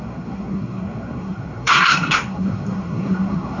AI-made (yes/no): yes